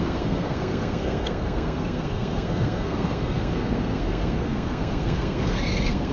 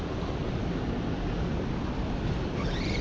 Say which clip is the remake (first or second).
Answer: first